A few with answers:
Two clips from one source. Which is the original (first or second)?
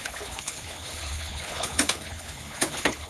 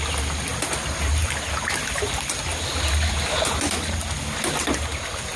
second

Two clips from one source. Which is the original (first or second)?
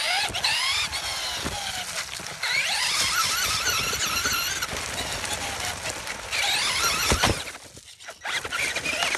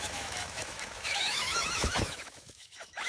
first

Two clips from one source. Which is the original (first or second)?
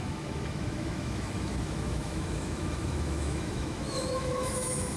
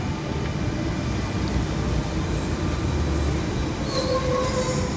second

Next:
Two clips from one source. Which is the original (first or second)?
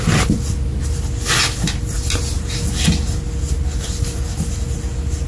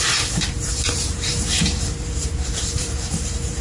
first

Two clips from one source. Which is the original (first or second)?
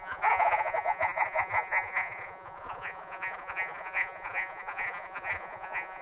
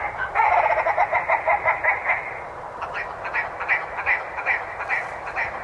second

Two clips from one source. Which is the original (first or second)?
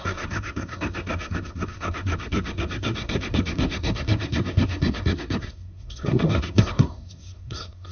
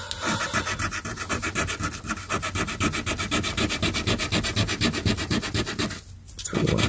second